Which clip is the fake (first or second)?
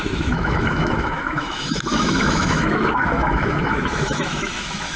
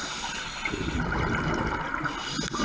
first